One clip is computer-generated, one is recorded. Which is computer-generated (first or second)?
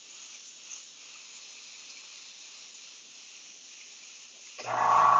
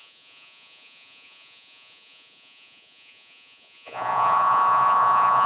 second